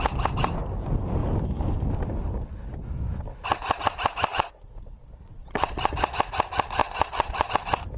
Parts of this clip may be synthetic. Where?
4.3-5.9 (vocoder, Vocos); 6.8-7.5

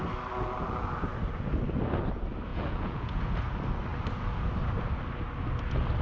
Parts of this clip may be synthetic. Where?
2.5-3.2 (vocoder, Vocos)